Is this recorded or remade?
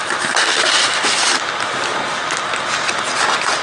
remade